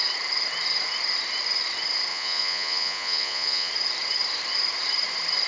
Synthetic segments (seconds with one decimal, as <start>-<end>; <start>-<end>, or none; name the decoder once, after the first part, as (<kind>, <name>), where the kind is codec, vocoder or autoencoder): 2.1-3.7 (vocoder, Vocos)